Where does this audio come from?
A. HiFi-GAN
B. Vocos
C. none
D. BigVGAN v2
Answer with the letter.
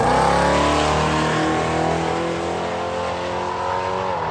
C